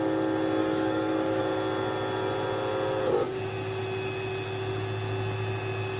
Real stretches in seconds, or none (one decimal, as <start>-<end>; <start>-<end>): 0.0-0.6; 1.4-6.0